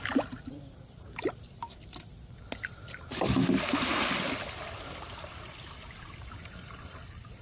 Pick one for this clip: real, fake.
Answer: real